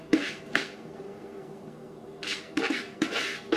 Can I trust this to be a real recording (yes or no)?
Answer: no